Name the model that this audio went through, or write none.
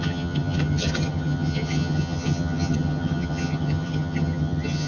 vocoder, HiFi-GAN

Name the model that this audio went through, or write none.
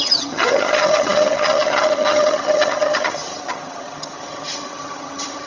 vocoder, HiFi-GAN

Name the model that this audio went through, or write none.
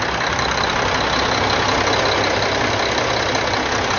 none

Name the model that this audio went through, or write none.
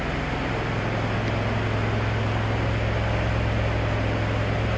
none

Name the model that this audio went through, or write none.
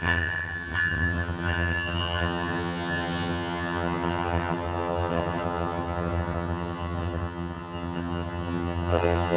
vocoder, HiFi-GAN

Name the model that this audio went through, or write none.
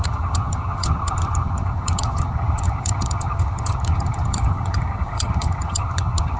vocoder, HiFi-GAN